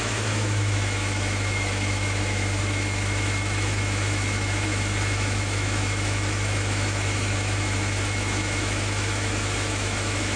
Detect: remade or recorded remade